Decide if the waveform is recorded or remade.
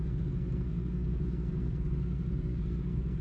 remade